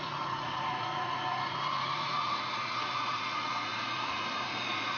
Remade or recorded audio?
remade